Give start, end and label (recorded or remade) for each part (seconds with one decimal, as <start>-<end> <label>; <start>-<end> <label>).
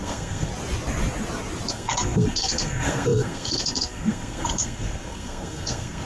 0.0-0.5 remade; 0.5-1.7 recorded; 1.7-6.1 remade